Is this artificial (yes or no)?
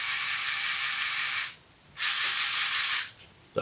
no